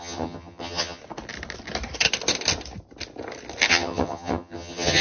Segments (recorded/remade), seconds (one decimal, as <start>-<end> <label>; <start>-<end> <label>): 0.0-1.0 remade; 1.0-3.7 recorded; 3.7-5.0 remade